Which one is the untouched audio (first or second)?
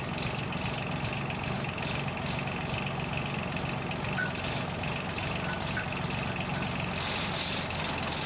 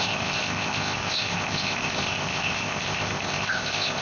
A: first